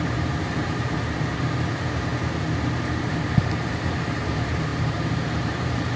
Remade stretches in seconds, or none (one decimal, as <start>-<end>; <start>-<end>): 0.0-2.1; 2.8-6.0